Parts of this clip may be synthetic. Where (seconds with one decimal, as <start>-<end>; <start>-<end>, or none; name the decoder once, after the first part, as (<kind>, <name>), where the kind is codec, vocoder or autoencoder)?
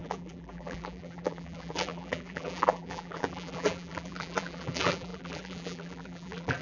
0.0-6.6 (vocoder, BigVGAN v2)